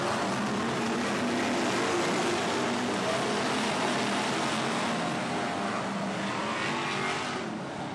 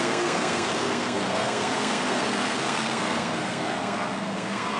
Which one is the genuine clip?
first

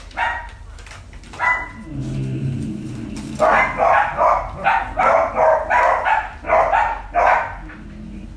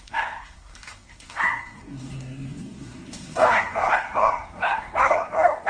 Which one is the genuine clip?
first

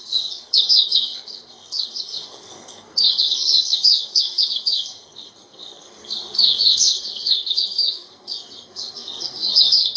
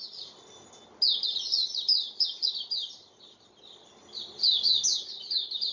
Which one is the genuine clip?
second